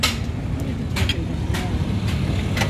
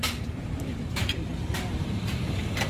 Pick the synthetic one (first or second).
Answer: second